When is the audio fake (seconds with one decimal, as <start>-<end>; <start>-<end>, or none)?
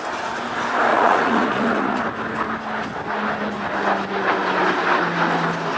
0.9-2.0